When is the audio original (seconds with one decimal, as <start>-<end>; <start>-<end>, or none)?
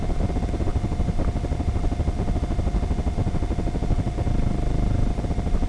0.0-5.7